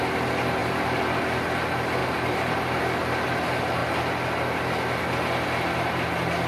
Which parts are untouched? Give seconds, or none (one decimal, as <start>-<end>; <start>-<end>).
0.0-0.6; 1.2-2.0; 2.8-6.5